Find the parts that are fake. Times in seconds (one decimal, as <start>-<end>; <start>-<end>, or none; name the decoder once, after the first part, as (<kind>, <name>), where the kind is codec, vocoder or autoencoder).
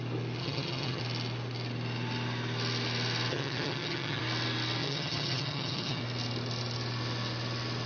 0.4-1.0 (vocoder, HiFi-GAN); 3.3-4.2; 4.8-6.0